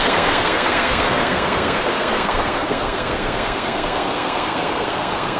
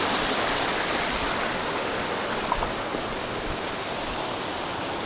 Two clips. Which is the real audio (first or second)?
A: second